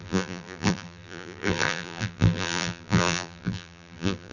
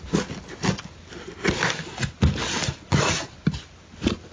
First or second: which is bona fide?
second